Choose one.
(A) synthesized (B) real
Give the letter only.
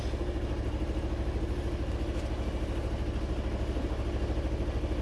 B